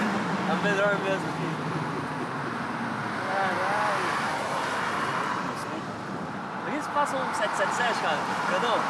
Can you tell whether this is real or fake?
real